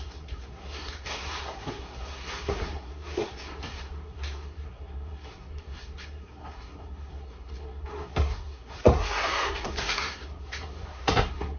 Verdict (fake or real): fake